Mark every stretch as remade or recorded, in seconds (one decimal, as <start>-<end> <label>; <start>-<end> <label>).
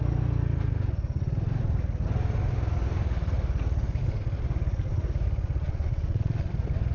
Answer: 0.0-5.6 recorded; 5.6-6.5 remade; 6.5-6.9 recorded